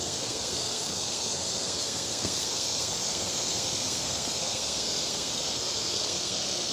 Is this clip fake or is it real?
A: fake